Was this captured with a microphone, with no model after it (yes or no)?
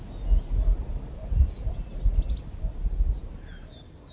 yes